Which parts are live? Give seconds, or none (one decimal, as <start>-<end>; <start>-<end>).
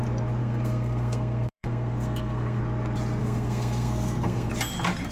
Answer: 0.0-0.4; 2.6-3.2; 4.5-5.1